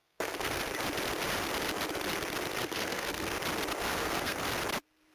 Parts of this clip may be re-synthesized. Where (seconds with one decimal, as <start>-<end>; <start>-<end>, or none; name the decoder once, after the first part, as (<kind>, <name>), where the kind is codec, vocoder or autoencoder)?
0.0-0.6 (codec, SNAC); 2.6-3.3; 3.9-4.4